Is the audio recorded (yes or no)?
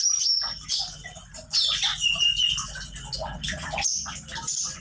yes